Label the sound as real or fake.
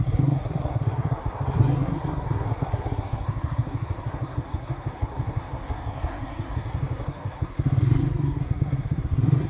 fake